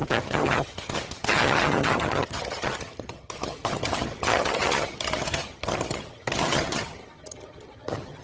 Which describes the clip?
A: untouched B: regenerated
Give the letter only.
B